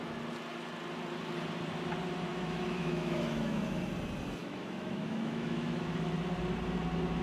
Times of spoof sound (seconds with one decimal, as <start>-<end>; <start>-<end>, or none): 2.3-3.8; 4.4-5.9